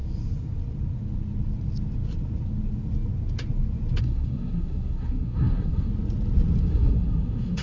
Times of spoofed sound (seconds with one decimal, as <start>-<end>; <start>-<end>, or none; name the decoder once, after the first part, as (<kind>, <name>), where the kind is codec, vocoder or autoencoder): 4.0-5.9 (codec, SNAC); 6.6-7.6